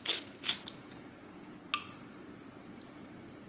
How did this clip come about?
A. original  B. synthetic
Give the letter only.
A